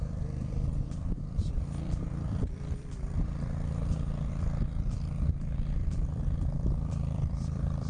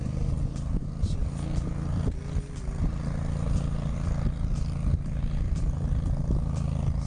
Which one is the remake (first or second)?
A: first